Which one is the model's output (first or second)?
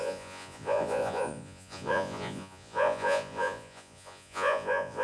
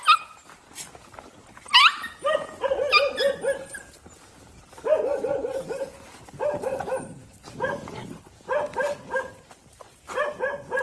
first